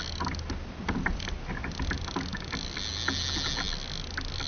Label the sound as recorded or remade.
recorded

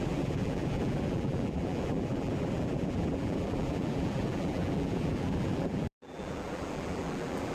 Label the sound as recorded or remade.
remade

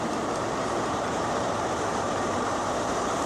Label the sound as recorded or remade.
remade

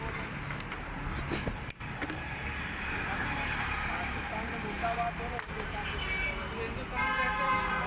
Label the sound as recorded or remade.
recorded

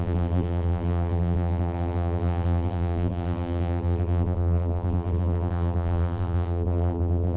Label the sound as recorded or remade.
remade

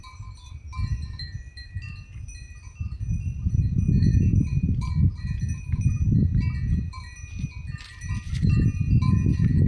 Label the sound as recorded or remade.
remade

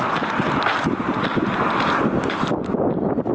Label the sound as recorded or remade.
recorded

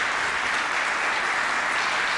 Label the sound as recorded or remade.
recorded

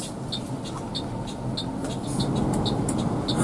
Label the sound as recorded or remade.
recorded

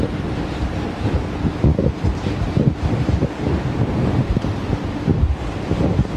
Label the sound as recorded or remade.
remade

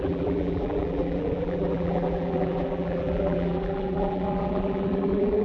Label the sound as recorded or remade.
remade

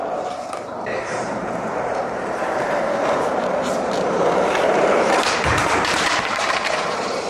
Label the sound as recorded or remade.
remade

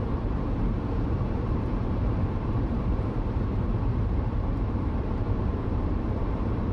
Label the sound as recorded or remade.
remade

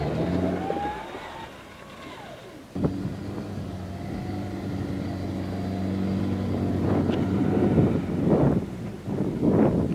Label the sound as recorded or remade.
recorded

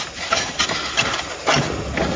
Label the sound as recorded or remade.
recorded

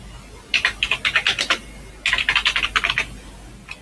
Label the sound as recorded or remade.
recorded